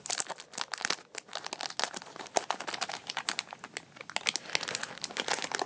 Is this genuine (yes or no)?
yes